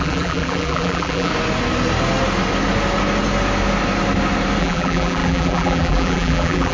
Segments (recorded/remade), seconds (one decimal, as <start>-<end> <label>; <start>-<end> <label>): 0.0-1.3 remade; 1.3-4.6 recorded; 4.6-6.7 remade